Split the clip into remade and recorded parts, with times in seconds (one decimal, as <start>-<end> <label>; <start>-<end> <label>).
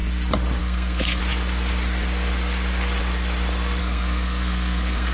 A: 0.0-0.6 recorded; 0.6-1.2 remade; 1.2-3.8 recorded; 3.8-5.1 remade